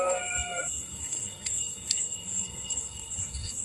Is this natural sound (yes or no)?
no